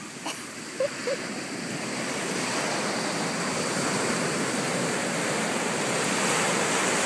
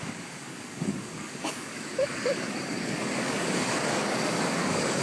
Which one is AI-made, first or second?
second